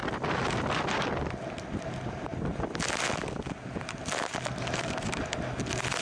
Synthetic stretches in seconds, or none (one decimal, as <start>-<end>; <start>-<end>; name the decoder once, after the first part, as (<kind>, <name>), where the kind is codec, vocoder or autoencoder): none